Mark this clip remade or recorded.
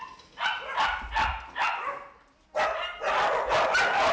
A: recorded